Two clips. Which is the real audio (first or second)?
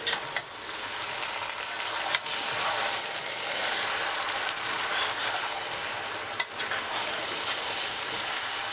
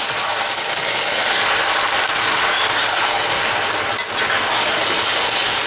second